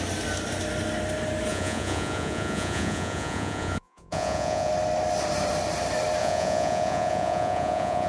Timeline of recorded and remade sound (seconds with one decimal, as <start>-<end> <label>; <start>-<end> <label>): 0.0-1.5 recorded; 1.5-4.7 remade; 4.7-6.2 recorded; 6.2-8.1 remade